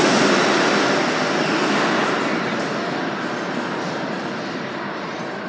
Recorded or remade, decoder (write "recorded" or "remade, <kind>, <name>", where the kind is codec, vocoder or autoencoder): recorded